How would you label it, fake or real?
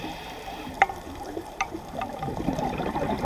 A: fake